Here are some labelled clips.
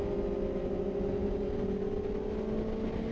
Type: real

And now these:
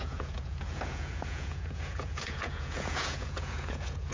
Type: fake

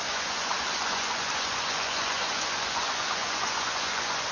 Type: fake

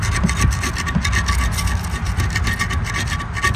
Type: real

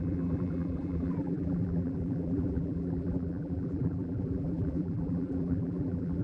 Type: fake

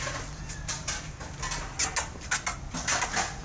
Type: real